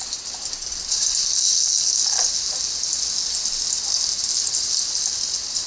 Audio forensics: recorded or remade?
recorded